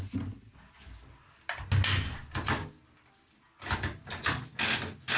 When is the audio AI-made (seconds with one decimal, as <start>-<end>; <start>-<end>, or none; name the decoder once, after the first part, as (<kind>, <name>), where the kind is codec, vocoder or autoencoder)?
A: none